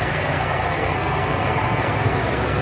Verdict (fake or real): fake